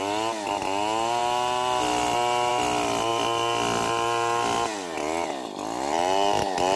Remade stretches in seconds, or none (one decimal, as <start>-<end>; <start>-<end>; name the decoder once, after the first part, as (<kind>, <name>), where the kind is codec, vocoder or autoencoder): none